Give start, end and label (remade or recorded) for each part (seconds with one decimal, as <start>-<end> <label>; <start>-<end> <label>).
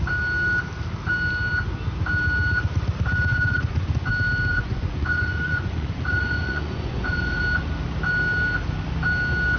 0.0-3.3 recorded; 3.3-4.1 remade; 4.1-4.5 recorded; 4.5-7.4 remade; 7.4-9.6 recorded